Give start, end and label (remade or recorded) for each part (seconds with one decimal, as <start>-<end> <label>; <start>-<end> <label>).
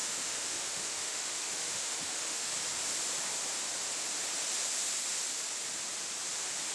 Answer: 0.0-2.5 remade; 2.5-6.7 recorded